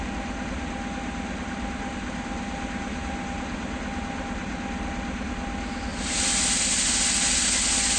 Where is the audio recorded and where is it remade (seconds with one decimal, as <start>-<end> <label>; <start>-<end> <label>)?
0.0-8.0 recorded